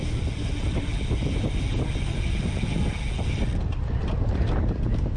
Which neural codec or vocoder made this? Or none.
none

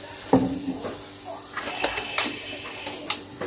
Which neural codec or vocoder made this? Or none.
none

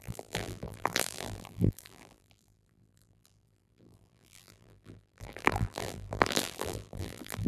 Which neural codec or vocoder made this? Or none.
vocoder, BigVGAN v2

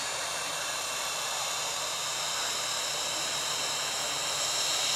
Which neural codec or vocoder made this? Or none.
vocoder, BigVGAN v2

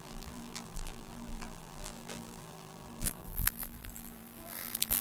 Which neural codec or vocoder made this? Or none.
vocoder, BigVGAN v2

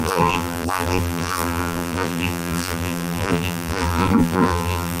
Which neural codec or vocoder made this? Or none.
vocoder, BigVGAN v2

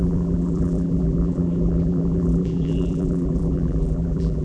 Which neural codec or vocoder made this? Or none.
vocoder, BigVGAN v2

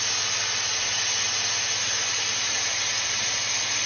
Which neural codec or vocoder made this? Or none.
none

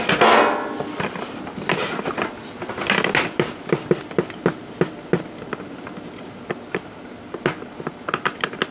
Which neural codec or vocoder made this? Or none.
none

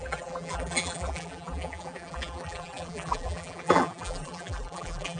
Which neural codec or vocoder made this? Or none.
vocoder, BigVGAN v2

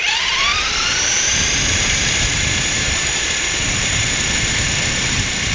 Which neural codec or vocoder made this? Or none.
vocoder, BigVGAN v2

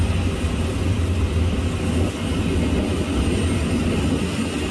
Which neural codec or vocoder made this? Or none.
none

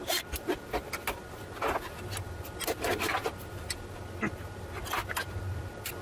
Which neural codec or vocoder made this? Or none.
none